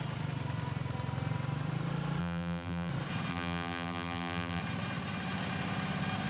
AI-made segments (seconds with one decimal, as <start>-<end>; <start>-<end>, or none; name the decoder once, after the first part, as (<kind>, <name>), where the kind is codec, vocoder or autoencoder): 2.2-2.9 (vocoder, BigVGAN v2); 3.3-4.6